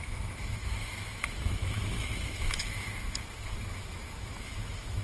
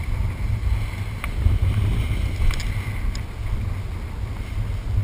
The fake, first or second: first